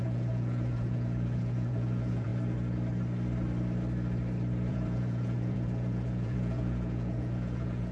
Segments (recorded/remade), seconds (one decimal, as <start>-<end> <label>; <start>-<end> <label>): 0.0-2.3 remade; 2.3-4.7 recorded; 4.7-7.9 remade